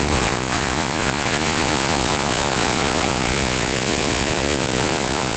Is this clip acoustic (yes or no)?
no